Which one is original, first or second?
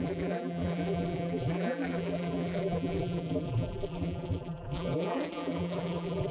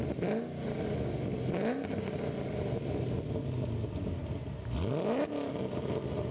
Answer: second